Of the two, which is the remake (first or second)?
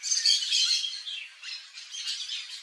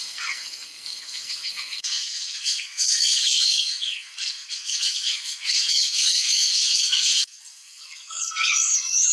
second